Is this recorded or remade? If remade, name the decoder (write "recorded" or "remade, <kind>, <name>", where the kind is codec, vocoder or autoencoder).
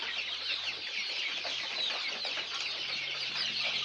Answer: remade, vocoder, BigVGAN v2